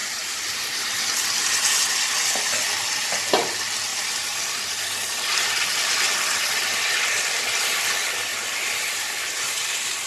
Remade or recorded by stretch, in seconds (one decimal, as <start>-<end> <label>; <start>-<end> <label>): 0.0-0.6 remade; 0.6-3.9 recorded; 3.9-5.9 remade; 5.9-8.3 recorded; 8.3-10.1 remade